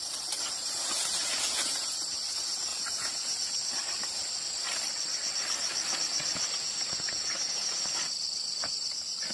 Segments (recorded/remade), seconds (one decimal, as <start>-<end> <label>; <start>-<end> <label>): 0.0-0.6 recorded; 0.6-1.9 remade; 1.9-2.7 recorded; 2.7-3.7 remade; 3.7-6.3 recorded; 6.3-7.8 remade; 7.8-9.3 recorded